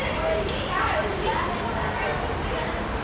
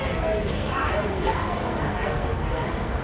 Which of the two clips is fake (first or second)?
second